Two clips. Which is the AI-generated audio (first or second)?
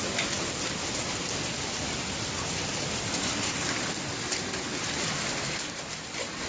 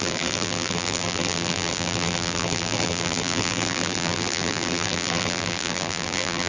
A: second